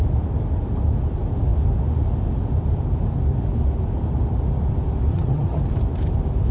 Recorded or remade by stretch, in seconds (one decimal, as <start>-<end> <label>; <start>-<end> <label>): 0.0-5.1 recorded; 5.1-5.6 remade; 5.6-6.5 recorded